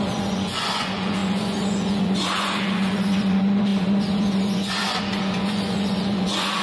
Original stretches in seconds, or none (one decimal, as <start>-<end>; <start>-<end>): none